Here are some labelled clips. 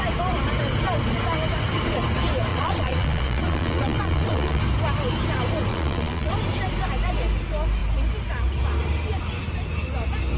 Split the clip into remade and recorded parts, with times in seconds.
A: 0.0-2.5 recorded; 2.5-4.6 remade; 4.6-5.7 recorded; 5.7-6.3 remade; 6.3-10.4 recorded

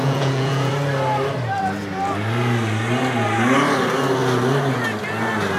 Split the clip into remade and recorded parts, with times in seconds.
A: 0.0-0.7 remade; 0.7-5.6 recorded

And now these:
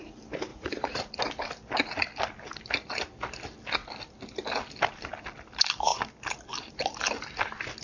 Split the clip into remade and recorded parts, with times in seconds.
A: 0.0-0.5 recorded; 0.5-1.2 remade; 1.2-7.8 recorded

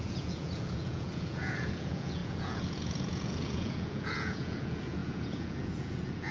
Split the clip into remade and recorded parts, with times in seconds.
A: 0.0-6.3 remade

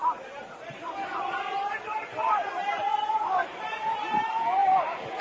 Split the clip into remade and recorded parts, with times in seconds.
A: 0.0-5.2 recorded

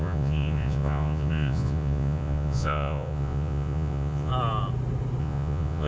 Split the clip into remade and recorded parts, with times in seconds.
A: 0.0-4.3 remade; 4.3-5.2 recorded; 5.2-5.9 remade

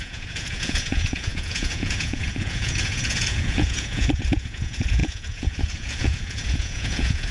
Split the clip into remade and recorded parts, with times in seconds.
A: 0.0-7.3 remade

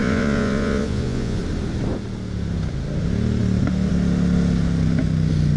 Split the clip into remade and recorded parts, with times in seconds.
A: 0.0-1.4 remade; 1.4-5.6 recorded